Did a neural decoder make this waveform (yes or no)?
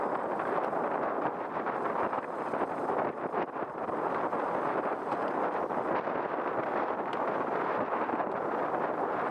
no